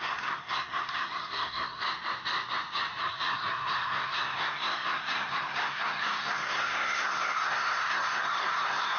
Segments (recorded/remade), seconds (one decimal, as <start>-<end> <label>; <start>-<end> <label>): 0.0-1.8 remade; 1.8-3.0 recorded; 3.0-9.0 remade